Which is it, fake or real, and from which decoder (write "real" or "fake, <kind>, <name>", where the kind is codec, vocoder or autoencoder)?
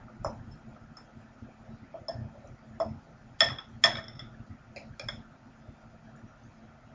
real